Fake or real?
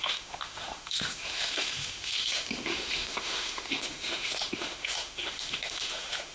fake